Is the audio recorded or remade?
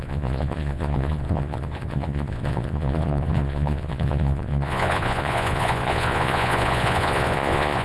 remade